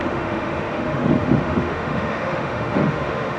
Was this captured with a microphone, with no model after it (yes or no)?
no